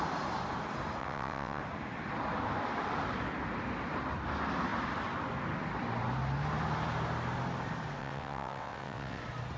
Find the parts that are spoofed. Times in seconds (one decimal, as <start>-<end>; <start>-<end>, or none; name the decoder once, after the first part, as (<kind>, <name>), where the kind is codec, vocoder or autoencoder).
1.0-1.6 (vocoder, WaveNeXt); 8.0-9.2